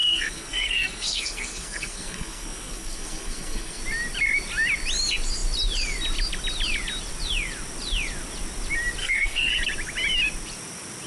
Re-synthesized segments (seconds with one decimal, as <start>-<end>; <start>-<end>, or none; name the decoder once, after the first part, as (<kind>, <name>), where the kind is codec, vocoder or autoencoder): 0.0-3.8 (codec, SNAC); 9.0-9.5